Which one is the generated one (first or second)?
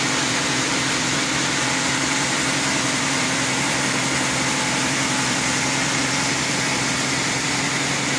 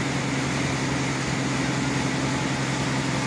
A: first